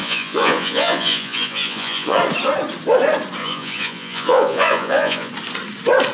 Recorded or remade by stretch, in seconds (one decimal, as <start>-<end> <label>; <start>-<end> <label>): 0.0-2.2 remade; 2.2-3.4 recorded; 3.4-5.3 remade; 5.3-6.1 recorded